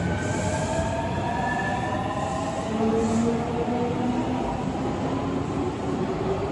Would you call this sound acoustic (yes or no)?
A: yes